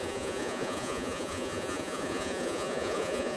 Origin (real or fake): fake